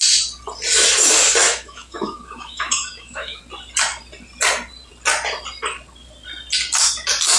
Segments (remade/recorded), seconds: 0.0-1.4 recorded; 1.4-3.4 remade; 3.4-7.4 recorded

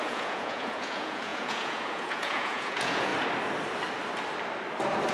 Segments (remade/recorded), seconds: 0.0-3.1 remade; 3.1-5.1 recorded

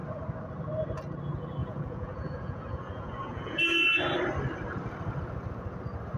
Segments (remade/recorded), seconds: 0.0-1.6 recorded; 1.6-4.0 remade; 4.0-6.2 recorded